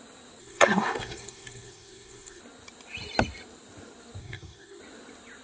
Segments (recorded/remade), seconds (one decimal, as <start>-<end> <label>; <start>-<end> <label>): 0.0-0.4 recorded; 0.4-2.4 remade; 2.4-4.2 recorded; 4.2-4.8 remade; 4.8-5.4 recorded